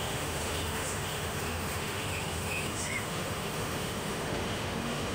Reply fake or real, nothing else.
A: fake